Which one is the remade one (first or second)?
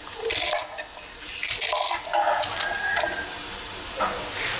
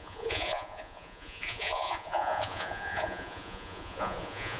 second